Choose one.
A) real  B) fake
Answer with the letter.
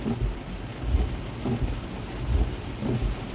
A